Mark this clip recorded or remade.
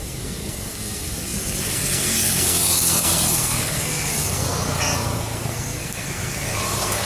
remade